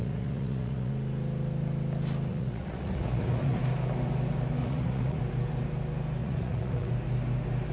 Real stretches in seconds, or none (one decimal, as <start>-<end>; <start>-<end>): 0.9-2.3; 3.6-4.6; 5.2-6.2; 6.9-7.7